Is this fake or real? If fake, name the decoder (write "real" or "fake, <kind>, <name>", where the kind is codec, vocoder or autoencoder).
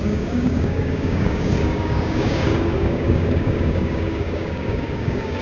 fake, codec, DAC